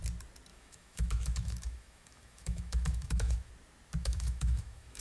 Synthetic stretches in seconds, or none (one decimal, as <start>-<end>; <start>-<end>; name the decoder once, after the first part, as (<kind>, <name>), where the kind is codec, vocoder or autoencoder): 0.5-3.5 (autoencoder, DAC-VAE); 4.0-5.0

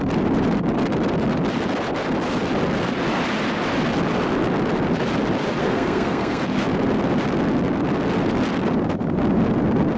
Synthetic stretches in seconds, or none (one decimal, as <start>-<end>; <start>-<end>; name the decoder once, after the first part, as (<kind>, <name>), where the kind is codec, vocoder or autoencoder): 5.6-6.4 (codec, SNAC)

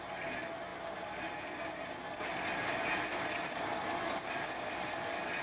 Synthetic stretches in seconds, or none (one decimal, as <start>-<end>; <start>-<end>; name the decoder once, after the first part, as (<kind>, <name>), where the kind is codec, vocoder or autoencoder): none

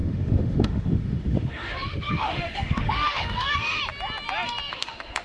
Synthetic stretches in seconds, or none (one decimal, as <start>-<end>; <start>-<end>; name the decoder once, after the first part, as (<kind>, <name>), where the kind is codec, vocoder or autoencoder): 0.0-3.8 (autoencoder, DAC-VAE); 4.7-5.2

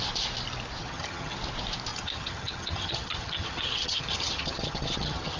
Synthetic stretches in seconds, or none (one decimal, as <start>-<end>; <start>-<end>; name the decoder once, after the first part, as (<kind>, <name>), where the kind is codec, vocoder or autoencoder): 0.8-1.4 (vocoder, HiFi-GAN); 1.9-5.4